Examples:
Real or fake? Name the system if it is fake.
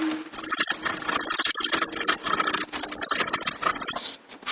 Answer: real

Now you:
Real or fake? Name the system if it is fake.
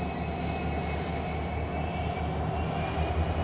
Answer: real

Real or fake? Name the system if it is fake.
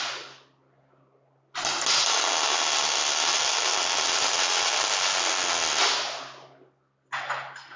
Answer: real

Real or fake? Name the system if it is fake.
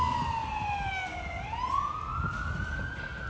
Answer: real